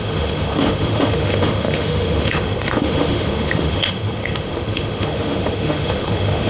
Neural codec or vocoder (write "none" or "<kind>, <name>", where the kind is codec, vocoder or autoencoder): autoencoder, DAC-VAE